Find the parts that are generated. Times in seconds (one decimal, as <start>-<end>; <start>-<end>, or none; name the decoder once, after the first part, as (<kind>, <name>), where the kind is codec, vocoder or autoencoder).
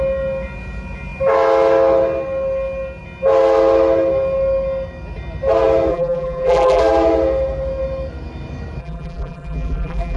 5.9-6.8 (vocoder, BigVGAN v2); 8.8-10.2